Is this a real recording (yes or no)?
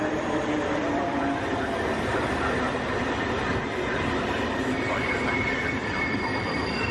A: no